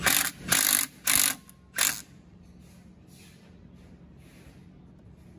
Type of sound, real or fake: real